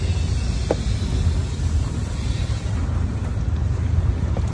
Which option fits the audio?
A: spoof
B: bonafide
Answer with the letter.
B